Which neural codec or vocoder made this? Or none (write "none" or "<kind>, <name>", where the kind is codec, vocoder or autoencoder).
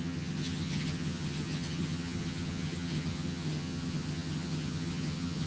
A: vocoder, HiFi-GAN